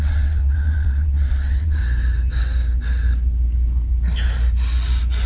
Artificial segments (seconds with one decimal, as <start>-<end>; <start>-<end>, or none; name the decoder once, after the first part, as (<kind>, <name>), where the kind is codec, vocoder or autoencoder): 0.0-1.8 (vocoder, WaveNeXt)